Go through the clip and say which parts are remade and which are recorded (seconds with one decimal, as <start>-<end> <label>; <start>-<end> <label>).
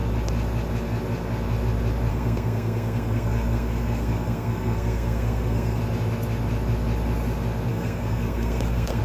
0.0-2.1 recorded; 2.1-5.8 remade; 5.8-7.7 recorded; 7.7-9.0 remade